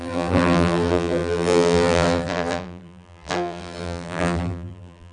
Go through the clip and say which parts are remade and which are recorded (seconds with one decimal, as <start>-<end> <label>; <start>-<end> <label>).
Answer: 0.0-5.1 remade